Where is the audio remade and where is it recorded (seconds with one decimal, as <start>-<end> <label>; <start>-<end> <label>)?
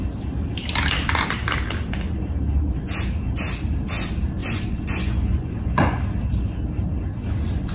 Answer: 0.0-4.4 recorded; 4.4-6.0 remade; 6.0-7.7 recorded